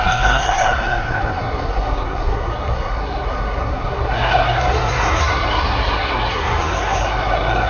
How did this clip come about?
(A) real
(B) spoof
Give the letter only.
B